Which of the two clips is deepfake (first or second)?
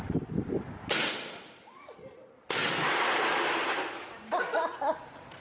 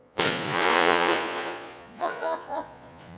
second